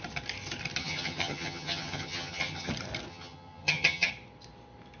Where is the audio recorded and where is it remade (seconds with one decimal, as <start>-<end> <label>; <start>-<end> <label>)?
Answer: 0.0-0.8 recorded; 0.8-2.7 remade; 2.7-3.1 recorded; 3.1-4.1 remade; 4.1-5.0 recorded